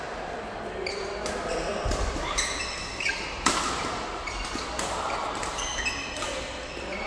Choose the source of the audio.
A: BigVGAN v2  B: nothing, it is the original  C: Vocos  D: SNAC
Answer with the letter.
B